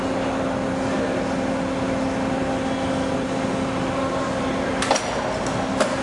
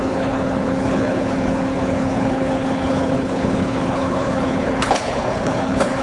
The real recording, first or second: first